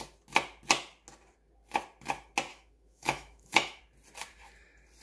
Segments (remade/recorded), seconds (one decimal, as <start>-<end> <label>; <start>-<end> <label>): 0.0-2.5 recorded; 2.5-3.8 remade; 3.8-5.0 recorded